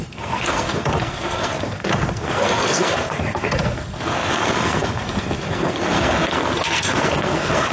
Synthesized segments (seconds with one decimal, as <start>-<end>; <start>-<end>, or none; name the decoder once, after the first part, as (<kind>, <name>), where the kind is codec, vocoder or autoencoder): 0.0-7.7 (codec, SNAC)

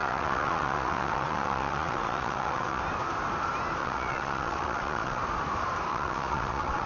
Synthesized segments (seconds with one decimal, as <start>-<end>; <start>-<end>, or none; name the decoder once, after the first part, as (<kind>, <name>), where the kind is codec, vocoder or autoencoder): 0.0-2.8 (vocoder, WaveNeXt); 3.8-5.2; 5.9-6.9

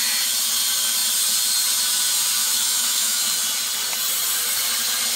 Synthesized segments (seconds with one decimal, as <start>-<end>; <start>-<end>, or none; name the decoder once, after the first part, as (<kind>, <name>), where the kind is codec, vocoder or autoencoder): 2.4-3.2 (autoencoder, DAC-VAE)

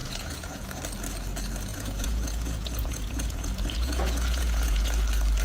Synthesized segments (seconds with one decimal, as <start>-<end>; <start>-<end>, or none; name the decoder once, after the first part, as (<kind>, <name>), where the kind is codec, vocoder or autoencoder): 0.0-0.8 (vocoder, Vocos); 1.7-4.9

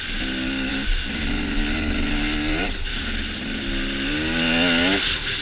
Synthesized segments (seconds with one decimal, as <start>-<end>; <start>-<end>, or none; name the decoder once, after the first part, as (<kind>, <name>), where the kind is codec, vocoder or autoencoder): 0.7-1.3 (vocoder, BigVGAN v2)